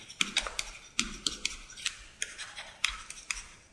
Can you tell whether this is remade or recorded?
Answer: remade